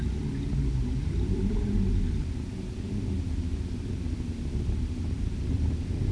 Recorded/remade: recorded